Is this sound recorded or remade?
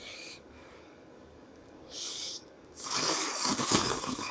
remade